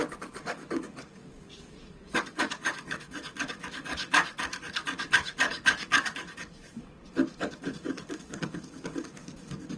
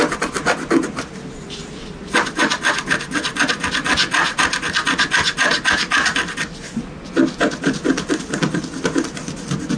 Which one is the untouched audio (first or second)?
second